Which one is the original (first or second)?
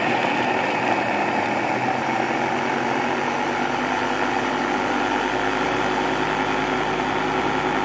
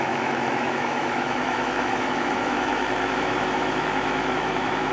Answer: first